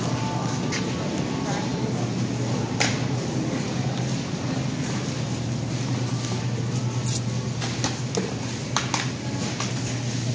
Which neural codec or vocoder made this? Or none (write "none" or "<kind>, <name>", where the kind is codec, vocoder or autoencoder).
none